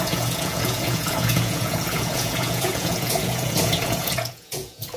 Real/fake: fake